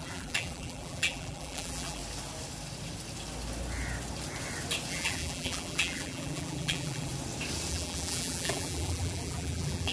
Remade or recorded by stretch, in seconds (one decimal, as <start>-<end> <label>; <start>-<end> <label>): 0.0-2.0 remade; 2.0-4.9 recorded; 4.9-7.1 remade; 7.1-7.7 recorded; 7.7-9.9 remade

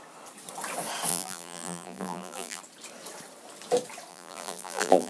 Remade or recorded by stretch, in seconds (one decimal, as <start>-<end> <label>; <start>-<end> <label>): 0.0-1.1 recorded; 1.1-2.6 remade; 2.6-4.1 recorded; 4.1-5.1 remade